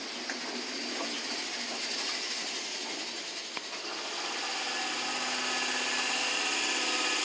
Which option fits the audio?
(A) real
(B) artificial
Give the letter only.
A